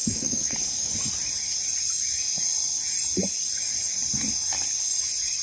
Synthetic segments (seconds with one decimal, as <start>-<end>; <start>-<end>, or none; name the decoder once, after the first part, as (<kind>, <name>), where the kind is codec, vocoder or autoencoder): 0.0-0.9 (codec, DAC)